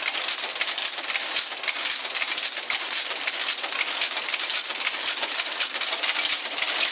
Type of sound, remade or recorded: recorded